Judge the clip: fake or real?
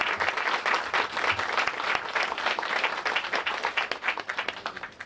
real